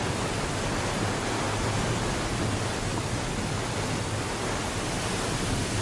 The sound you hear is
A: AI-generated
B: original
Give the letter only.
B